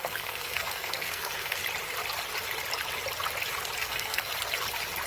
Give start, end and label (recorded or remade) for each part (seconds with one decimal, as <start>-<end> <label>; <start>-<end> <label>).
0.0-1.6 remade; 1.6-3.8 recorded; 3.8-4.3 remade; 4.3-5.1 recorded